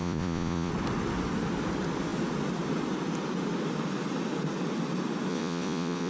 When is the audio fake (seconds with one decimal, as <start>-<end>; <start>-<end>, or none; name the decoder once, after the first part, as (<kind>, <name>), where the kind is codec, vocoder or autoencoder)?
0.0-0.7 (vocoder, Vocos); 5.3-6.1